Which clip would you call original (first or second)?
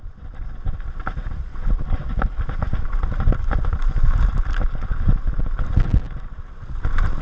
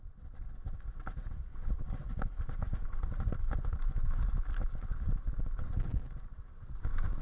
second